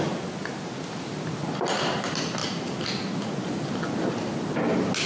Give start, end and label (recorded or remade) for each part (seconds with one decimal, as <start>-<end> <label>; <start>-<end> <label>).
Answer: 0.0-5.1 recorded